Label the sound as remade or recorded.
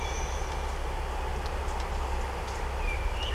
recorded